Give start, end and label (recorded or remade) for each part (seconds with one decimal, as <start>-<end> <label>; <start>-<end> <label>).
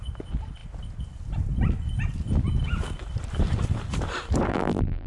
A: 0.0-4.5 recorded; 4.5-5.1 remade